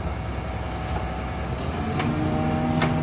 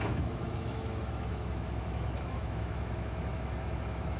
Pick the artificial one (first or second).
second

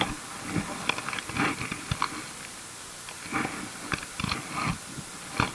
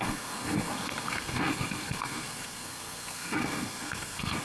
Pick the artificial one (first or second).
second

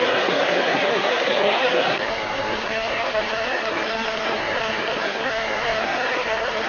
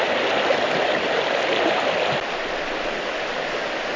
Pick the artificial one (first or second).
first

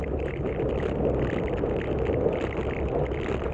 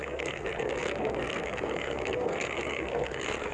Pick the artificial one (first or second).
second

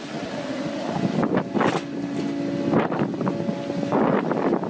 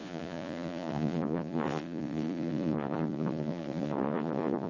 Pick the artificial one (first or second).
second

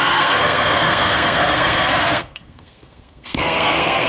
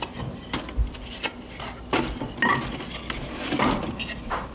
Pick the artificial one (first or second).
first